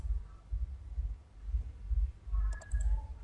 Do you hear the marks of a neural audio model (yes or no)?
no